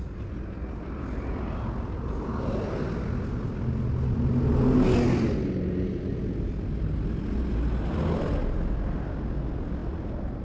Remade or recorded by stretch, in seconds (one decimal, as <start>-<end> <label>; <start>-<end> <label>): 0.0-10.4 recorded